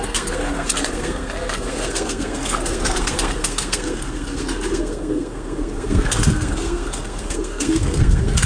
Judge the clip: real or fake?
fake